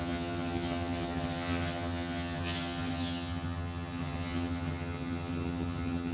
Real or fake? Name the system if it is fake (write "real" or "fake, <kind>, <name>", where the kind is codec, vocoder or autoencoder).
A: fake, vocoder, HiFi-GAN